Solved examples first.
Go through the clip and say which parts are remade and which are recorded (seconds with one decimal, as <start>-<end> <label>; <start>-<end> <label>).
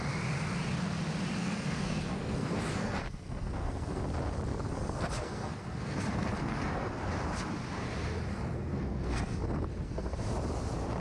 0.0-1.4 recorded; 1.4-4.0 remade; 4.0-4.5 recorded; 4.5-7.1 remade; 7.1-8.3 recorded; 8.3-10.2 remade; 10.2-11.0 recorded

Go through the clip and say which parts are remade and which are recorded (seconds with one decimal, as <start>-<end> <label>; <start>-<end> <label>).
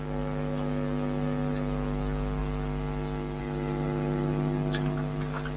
0.0-5.6 recorded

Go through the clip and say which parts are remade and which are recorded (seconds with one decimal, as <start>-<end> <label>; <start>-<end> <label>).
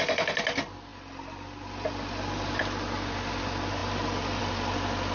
0.0-5.1 recorded